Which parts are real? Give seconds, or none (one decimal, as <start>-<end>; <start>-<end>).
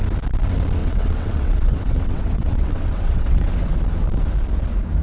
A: 0.0-0.8; 3.8-5.0